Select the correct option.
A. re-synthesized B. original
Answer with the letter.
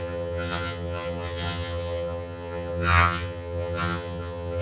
A